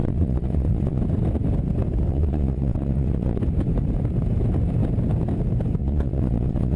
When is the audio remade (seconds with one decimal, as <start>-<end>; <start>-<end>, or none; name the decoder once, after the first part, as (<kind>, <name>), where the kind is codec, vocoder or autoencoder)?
0.0-1.0 (vocoder, Vocos); 2.1-3.4; 5.8-6.8